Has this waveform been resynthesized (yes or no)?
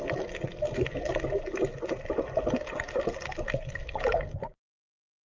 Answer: no